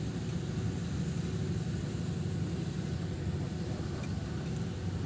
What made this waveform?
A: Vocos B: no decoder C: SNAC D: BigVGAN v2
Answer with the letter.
B